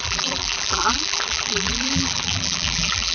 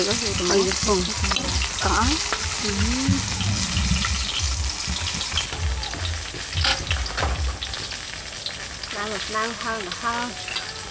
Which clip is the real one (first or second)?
second